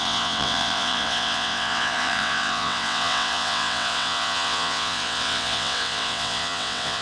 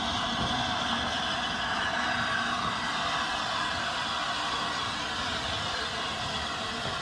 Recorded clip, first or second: second